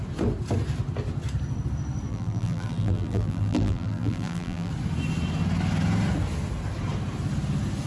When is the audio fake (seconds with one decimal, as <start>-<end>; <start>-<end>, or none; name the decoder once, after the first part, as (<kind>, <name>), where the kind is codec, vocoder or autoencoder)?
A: 2.1-4.7 (vocoder, BigVGAN v2)